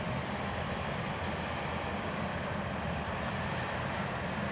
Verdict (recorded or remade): recorded